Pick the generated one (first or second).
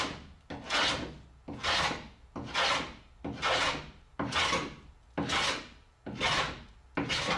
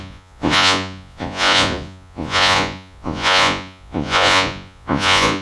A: second